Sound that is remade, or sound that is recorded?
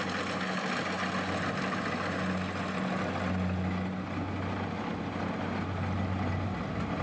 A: recorded